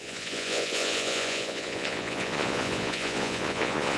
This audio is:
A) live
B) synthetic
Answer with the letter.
B